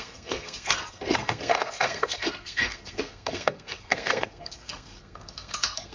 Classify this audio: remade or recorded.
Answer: remade